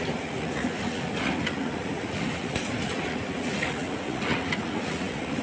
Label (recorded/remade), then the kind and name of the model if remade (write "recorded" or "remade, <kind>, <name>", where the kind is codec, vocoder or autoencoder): remade, vocoder, Vocos